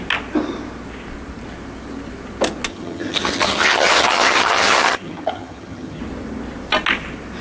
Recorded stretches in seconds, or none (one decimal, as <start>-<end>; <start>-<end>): 0.0-2.7; 6.0-7.4